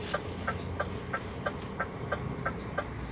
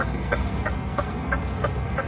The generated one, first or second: second